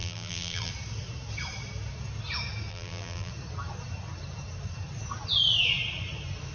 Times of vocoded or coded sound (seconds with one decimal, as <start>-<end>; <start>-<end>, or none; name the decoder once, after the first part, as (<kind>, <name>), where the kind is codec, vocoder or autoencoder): 0.0-0.7 (vocoder, BigVGAN v2); 2.7-3.3